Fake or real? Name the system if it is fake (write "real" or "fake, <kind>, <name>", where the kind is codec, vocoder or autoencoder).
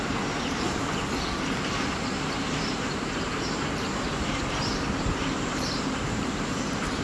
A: fake, vocoder, BigVGAN v2